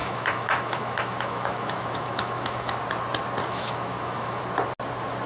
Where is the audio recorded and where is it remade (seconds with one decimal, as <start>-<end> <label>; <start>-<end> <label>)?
0.0-2.8 remade; 2.8-3.4 recorded; 3.4-4.4 remade; 4.4-5.3 recorded